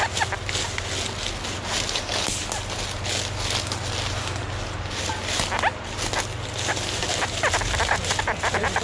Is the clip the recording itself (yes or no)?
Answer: yes